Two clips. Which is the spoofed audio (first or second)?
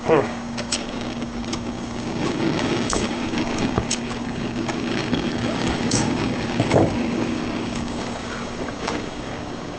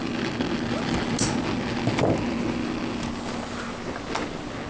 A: first